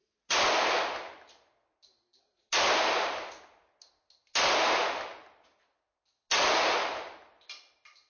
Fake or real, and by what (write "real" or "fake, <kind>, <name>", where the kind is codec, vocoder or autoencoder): real